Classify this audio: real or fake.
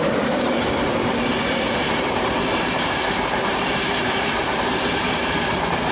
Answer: fake